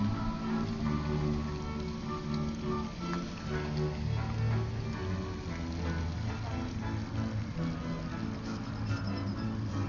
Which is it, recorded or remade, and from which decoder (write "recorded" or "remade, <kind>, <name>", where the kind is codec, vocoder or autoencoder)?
recorded